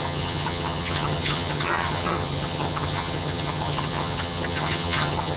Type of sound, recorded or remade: remade